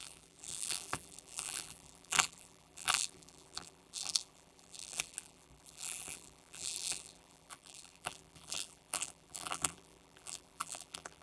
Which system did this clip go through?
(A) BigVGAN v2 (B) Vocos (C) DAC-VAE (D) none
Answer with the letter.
A